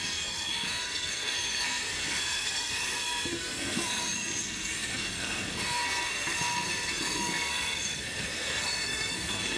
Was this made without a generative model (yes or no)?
no